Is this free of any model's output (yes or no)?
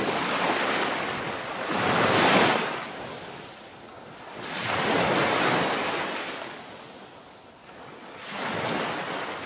yes